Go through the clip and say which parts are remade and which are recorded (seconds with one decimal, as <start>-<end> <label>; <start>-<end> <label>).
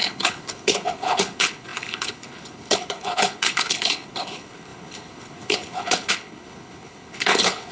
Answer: 0.0-7.7 remade